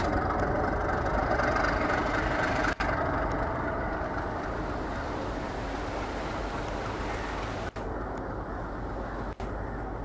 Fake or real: real